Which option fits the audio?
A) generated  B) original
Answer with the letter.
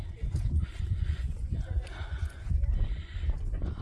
A